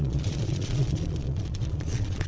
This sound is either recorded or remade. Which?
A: remade